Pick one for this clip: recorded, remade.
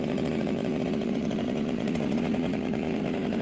remade